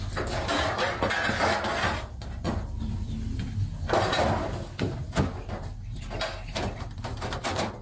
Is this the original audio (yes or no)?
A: yes